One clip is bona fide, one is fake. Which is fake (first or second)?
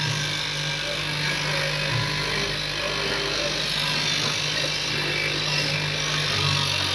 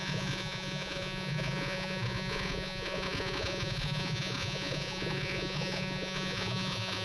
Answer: second